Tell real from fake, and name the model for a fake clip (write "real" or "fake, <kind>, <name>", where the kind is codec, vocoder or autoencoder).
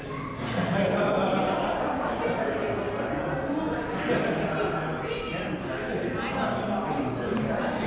real